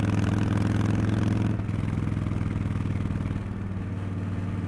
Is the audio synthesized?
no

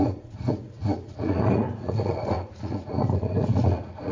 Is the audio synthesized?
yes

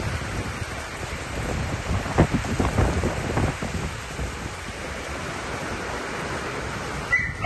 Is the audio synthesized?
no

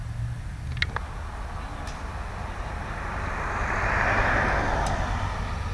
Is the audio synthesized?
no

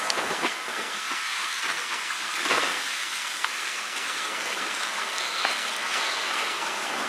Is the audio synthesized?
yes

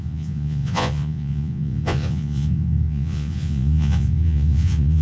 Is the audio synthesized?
yes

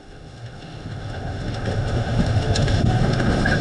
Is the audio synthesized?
yes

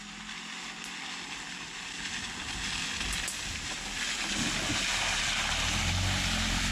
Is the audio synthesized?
no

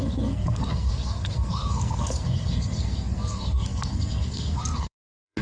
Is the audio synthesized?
yes